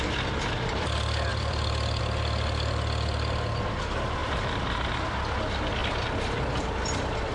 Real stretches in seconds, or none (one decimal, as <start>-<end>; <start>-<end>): 0.0-1.3; 2.0-4.2; 4.9-5.8; 6.8-7.3